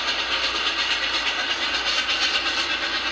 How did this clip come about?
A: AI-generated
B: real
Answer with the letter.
B